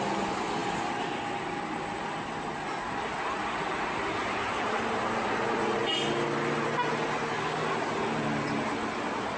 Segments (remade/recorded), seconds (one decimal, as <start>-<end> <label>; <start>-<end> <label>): 0.0-9.4 recorded